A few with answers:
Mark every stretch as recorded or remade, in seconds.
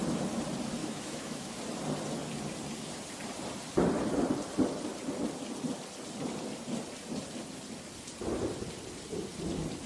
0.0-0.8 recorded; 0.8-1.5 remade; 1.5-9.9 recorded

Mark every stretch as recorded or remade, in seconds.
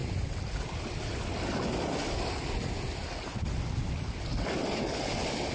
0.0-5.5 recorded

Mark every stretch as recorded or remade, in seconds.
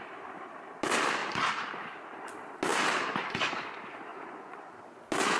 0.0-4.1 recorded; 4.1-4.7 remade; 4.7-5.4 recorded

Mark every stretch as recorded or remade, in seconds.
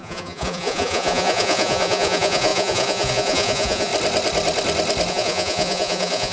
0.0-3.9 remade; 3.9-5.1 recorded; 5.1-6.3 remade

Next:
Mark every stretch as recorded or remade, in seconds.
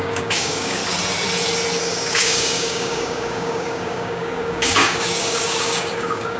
0.0-0.8 remade; 0.8-1.8 recorded; 1.8-6.4 remade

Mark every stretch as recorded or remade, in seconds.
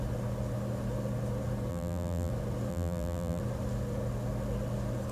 0.0-1.7 recorded; 1.7-2.3 remade; 2.3-2.7 recorded; 2.7-3.4 remade; 3.4-5.1 recorded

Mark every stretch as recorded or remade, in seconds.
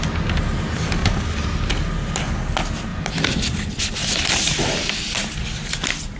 0.0-1.0 recorded; 1.0-2.3 remade; 2.3-2.9 recorded; 2.9-4.3 remade; 4.3-6.2 recorded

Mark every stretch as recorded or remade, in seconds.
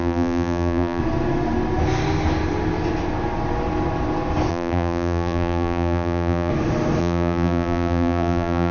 0.0-1.0 remade; 1.0-4.5 recorded; 4.5-6.5 remade; 6.5-7.0 recorded; 7.0-8.7 remade